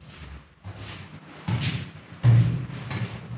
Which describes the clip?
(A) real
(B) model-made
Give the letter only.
A